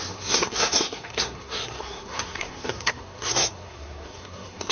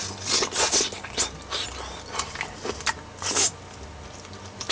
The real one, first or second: second